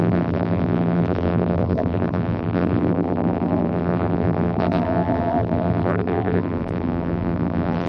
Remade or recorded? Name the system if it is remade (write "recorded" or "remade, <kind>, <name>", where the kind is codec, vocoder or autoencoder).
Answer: remade, vocoder, BigVGAN v2